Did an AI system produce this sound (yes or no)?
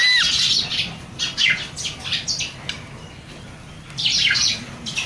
no